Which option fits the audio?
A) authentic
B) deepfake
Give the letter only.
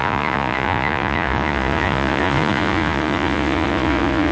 B